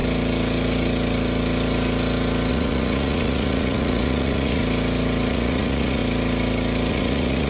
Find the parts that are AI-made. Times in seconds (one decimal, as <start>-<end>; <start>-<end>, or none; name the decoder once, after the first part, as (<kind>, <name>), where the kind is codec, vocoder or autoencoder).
2.5-4.6 (vocoder, Vocos); 5.3-6.0; 6.9-7.5